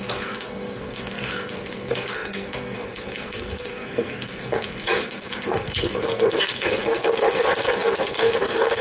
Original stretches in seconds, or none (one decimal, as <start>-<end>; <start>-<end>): none